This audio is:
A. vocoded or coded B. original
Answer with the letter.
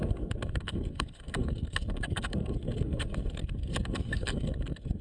A